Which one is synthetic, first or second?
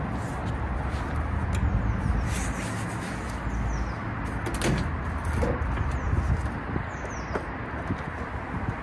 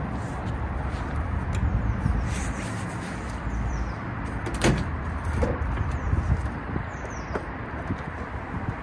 second